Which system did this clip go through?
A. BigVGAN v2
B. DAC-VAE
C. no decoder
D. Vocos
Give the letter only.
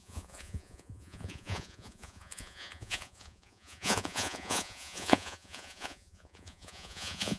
D